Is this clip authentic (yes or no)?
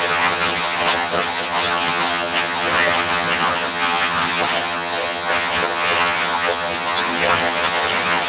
no